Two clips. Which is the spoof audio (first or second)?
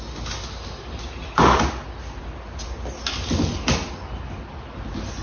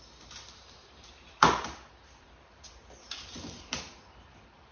second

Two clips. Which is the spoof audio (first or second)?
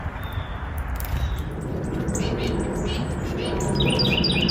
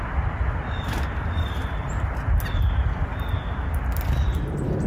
first